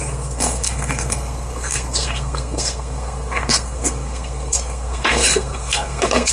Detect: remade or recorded remade